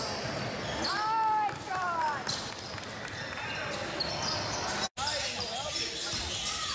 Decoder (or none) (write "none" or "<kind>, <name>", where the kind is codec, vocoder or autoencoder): none